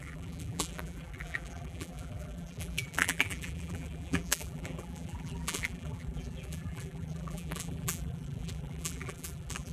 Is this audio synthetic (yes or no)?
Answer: yes